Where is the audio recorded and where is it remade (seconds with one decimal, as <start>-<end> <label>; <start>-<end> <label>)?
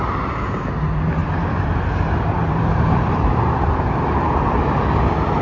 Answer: 0.0-1.2 recorded; 1.2-3.6 remade; 3.6-5.4 recorded